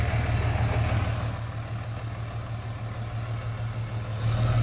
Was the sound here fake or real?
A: real